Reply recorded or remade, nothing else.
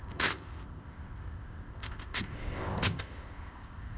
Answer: remade